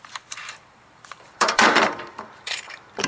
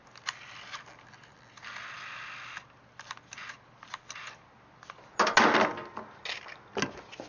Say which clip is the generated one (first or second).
first